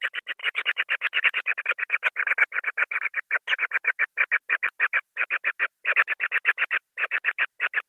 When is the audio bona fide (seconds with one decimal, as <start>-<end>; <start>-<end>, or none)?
0.0-7.9